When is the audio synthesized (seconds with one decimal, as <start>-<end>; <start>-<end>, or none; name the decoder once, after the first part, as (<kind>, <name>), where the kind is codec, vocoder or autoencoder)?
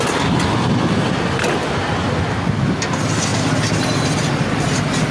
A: none